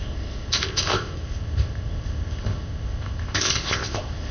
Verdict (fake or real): fake